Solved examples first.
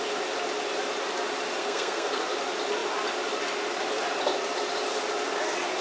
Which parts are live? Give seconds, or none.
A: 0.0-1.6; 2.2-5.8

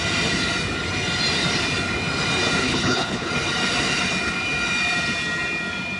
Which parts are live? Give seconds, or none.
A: 0.0-2.6; 3.3-6.0